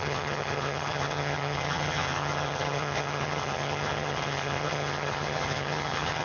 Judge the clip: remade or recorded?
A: remade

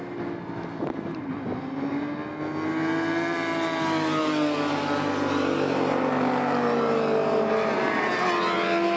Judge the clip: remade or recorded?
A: recorded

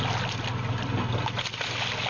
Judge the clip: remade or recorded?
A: recorded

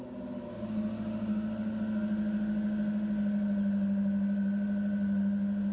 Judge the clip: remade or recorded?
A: recorded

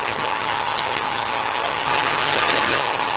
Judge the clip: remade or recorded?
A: remade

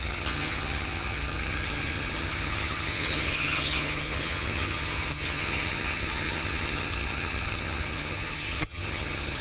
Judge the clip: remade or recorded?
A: remade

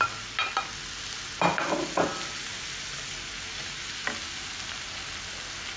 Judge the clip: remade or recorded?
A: recorded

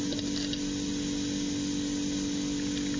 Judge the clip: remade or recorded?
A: recorded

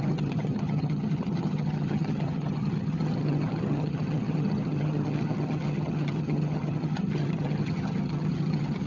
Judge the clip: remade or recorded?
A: remade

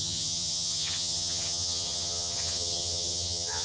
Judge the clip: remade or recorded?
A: remade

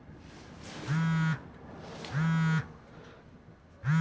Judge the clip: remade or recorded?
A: recorded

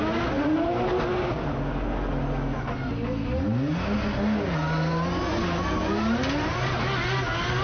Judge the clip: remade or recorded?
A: recorded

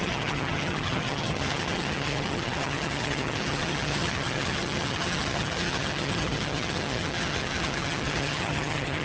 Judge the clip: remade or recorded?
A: remade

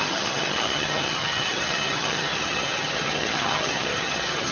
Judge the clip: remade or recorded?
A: remade